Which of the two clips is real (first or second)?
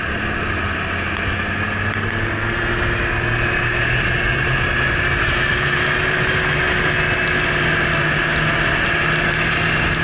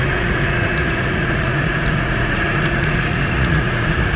first